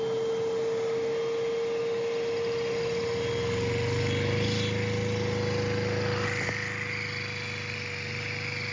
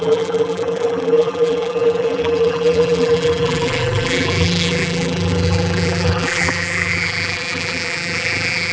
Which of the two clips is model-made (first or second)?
second